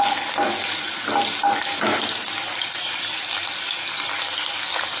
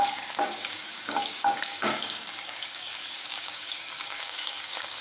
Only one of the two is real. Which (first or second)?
first